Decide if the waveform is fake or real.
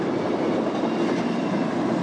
real